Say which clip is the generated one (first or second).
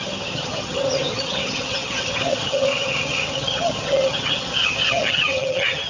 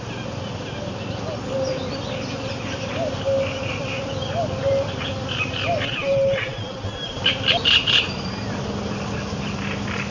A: first